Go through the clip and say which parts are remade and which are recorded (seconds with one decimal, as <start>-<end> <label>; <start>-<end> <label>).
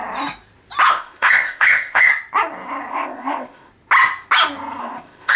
0.0-0.9 recorded; 0.9-2.1 remade; 2.1-2.9 recorded; 2.9-3.7 remade; 3.7-4.8 recorded; 4.8-5.4 remade